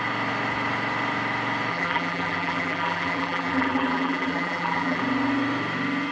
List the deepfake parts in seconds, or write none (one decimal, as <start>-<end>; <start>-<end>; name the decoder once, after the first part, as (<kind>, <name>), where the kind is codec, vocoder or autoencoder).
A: 1.7-5.0 (vocoder, BigVGAN v2)